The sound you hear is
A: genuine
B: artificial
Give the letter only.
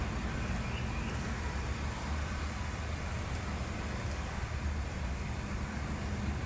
A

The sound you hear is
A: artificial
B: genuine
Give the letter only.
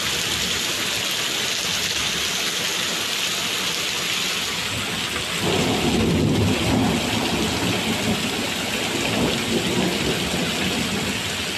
B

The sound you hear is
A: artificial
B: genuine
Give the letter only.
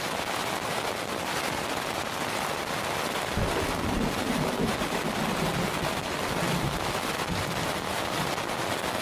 B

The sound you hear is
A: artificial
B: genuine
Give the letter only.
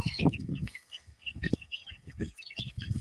A